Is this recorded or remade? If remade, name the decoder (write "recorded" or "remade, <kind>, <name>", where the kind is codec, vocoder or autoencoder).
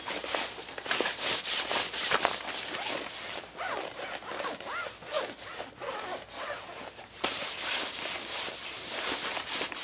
recorded